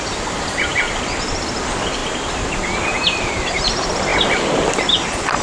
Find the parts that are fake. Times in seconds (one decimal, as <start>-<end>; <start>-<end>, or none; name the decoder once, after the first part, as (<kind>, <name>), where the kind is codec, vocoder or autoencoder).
0.0-2.0 (vocoder, BigVGAN v2); 3.2-5.4